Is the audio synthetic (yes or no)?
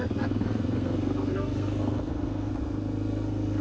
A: yes